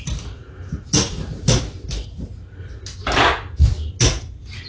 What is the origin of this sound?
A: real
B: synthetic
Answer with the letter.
A